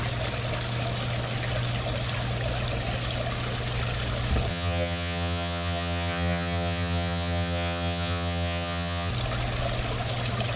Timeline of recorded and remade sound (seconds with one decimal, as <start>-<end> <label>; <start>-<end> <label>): 0.0-4.5 recorded; 4.5-9.1 remade; 9.1-10.6 recorded